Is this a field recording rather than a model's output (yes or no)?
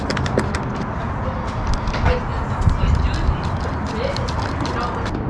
yes